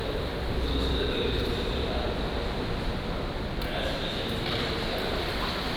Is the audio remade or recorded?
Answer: recorded